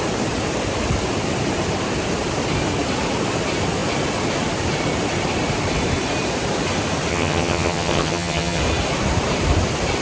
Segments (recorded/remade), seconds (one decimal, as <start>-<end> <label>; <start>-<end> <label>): 0.0-7.1 recorded; 7.1-8.6 remade; 8.6-10.0 recorded